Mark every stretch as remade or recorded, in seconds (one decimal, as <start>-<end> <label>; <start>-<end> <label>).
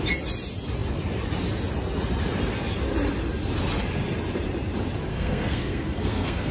0.0-5.1 recorded; 5.1-6.5 remade